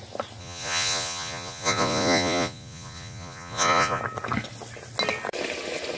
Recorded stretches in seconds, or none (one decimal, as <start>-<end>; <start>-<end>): 0.0-0.4; 4.0-6.0